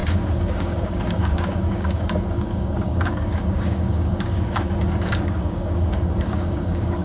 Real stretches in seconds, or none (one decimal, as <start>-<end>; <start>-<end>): none